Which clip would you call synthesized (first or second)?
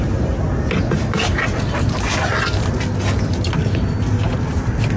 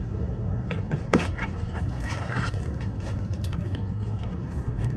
second